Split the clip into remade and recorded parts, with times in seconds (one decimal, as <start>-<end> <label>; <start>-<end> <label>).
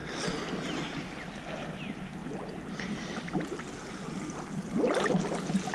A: 0.0-5.7 recorded